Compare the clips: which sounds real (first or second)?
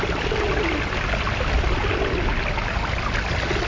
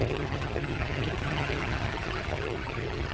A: first